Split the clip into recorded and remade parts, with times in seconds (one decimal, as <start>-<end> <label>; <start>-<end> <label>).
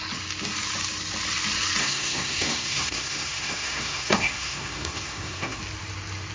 0.0-1.8 recorded; 1.8-5.6 remade; 5.6-6.3 recorded